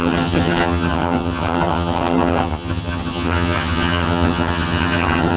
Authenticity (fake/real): fake